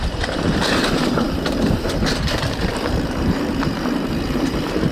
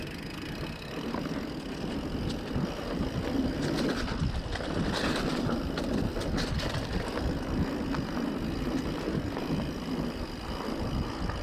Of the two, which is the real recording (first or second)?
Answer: second